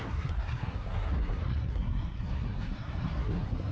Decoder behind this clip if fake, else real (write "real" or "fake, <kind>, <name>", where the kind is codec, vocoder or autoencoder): fake, codec, SNAC